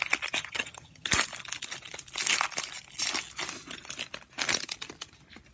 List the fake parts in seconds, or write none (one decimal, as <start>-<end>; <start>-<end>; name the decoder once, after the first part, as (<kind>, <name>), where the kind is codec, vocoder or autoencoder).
0.4-1.1 (vocoder, HiFi-GAN)